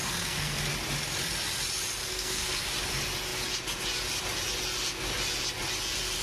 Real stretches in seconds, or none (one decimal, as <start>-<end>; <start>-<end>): 0.6-2.0; 2.6-6.2